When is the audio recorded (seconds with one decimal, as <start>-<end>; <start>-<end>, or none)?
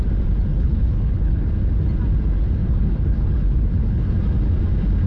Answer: 0.0-0.5; 1.5-2.6; 4.1-5.1